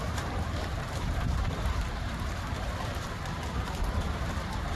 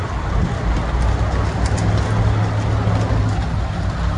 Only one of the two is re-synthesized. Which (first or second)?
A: first